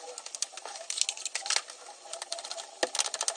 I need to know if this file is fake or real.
real